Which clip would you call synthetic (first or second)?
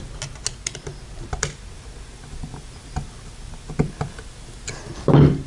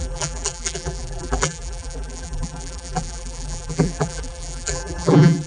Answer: second